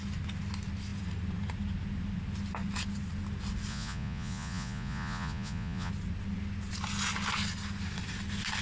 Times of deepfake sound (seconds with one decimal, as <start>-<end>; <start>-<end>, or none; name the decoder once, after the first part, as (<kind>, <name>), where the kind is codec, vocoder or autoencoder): 3.7-5.9 (vocoder, Vocos)